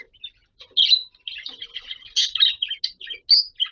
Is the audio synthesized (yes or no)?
no